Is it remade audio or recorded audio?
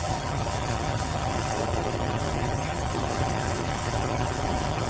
remade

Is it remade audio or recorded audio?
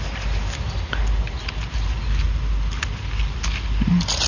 recorded